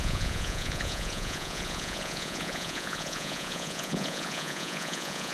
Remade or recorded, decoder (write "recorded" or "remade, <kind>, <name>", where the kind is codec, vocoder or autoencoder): remade, vocoder, Vocos